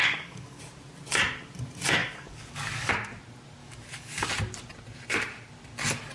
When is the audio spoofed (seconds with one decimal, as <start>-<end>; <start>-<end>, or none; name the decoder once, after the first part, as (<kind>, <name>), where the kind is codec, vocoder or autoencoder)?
0.0-0.6 (codec, DAC); 2.0-2.9; 3.6-4.3

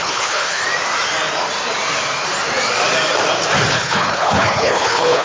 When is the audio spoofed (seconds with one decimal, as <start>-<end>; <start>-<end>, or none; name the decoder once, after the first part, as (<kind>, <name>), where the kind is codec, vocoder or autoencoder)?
0.0-0.6 (codec, HILCodec); 3.7-5.2

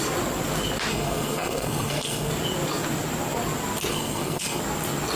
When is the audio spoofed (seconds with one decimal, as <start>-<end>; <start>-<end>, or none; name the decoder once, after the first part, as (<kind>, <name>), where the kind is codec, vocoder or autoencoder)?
0.9-2.3 (codec, SNAC); 3.9-4.6